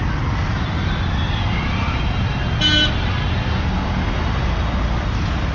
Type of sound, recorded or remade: recorded